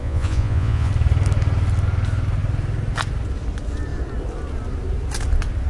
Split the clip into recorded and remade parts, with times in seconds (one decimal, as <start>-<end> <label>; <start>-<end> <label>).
0.0-0.9 remade; 0.9-5.7 recorded